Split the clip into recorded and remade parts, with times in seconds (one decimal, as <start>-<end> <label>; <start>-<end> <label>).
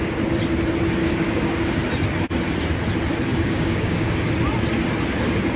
0.0-1.0 recorded; 1.0-1.7 remade; 1.7-3.3 recorded; 3.3-4.3 remade; 4.3-5.6 recorded